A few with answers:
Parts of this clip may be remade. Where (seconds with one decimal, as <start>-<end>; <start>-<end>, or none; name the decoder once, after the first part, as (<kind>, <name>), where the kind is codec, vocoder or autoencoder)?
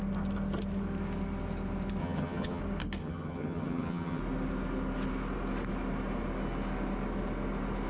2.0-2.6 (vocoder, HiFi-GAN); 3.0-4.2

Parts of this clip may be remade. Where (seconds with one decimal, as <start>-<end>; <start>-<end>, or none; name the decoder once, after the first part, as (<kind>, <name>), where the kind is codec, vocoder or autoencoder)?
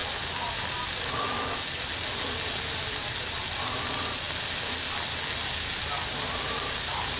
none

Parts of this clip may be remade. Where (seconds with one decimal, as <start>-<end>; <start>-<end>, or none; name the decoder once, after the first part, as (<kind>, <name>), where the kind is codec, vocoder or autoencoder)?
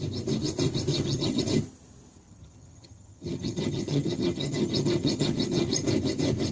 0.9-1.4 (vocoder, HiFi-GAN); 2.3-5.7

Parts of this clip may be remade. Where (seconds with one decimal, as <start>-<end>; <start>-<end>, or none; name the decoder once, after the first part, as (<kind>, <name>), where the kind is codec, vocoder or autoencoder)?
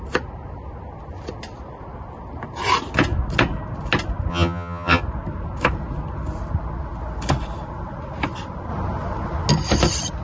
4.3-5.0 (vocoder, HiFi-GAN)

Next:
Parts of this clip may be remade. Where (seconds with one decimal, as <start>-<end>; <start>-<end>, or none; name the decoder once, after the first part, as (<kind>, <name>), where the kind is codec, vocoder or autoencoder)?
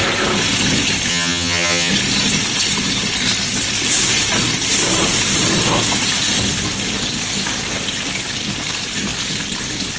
1.1-1.9 (vocoder, HiFi-GAN)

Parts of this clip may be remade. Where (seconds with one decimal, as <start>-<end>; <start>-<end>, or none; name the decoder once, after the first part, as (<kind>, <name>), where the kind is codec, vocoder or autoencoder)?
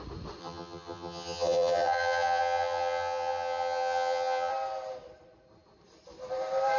0.4-4.5 (vocoder, HiFi-GAN)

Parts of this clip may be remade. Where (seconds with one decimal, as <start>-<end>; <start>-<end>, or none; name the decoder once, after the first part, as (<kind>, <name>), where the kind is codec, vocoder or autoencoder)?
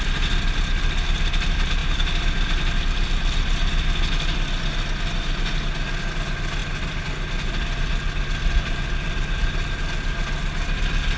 none